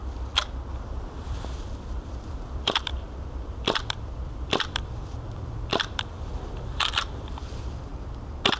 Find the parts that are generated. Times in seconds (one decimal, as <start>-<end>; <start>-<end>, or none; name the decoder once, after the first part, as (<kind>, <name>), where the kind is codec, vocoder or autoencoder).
0.7-7.9 (vocoder, BigVGAN v2)